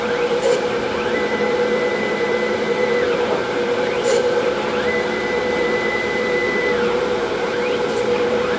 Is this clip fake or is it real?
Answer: fake